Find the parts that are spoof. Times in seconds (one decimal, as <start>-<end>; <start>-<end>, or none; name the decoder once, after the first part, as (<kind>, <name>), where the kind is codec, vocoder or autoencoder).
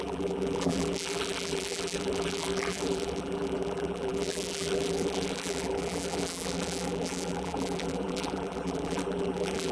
0.0-9.7 (vocoder, BigVGAN v2)